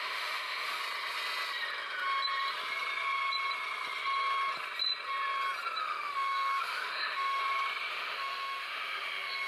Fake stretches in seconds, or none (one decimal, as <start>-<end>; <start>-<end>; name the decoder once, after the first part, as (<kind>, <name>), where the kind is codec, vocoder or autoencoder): 0.0-0.8 (autoencoder, DAC-VAE); 5.8-7.4; 7.9-9.5